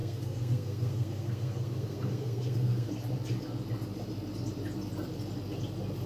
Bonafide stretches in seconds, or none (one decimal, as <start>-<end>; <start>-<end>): 2.9-6.1